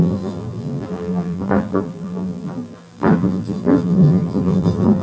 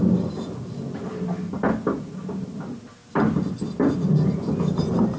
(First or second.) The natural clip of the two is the second